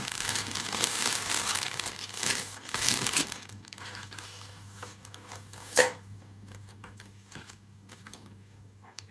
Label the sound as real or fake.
fake